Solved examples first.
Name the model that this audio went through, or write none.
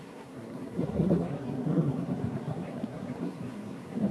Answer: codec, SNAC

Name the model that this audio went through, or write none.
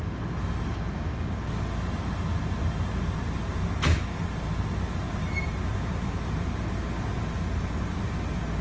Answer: none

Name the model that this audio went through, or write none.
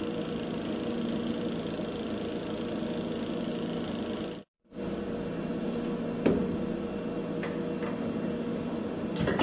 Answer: none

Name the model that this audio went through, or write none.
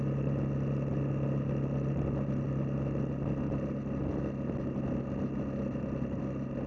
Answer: none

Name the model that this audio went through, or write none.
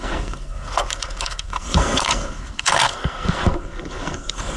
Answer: codec, SNAC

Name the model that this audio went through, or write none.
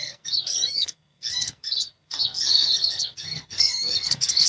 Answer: codec, SNAC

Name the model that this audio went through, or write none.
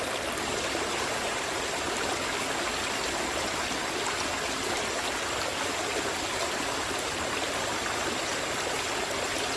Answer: none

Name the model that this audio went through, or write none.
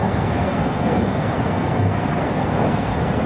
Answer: codec, SNAC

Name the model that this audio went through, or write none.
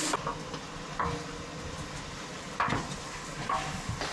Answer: none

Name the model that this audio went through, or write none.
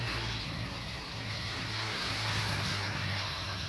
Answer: codec, SNAC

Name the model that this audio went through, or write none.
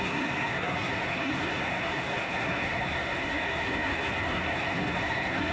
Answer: codec, SNAC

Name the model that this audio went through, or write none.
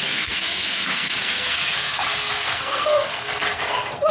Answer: codec, SNAC